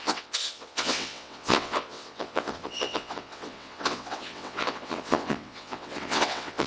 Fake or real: fake